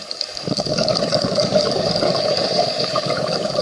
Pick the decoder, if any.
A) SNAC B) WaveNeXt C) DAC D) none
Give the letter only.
C